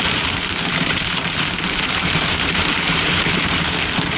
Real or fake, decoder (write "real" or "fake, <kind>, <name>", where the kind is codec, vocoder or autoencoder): fake, vocoder, BigVGAN v2